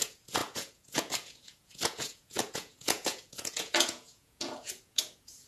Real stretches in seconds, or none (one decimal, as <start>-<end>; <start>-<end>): none